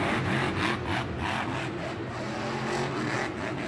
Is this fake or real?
real